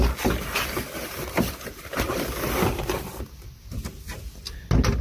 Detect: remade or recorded recorded